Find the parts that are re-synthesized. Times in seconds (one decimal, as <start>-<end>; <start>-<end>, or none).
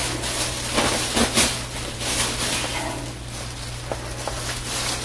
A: none